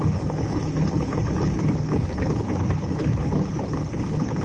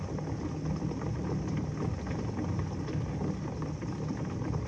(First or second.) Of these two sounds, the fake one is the first